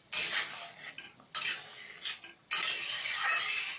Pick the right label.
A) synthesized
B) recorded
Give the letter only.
B